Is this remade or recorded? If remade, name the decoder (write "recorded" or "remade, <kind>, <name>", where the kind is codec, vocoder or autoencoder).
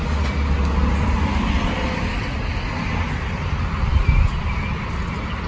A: recorded